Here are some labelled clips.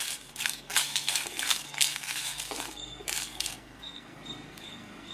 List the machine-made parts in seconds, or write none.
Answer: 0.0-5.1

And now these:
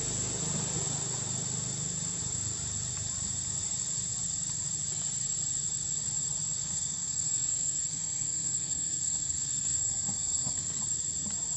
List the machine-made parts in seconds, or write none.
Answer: 6.6-10.8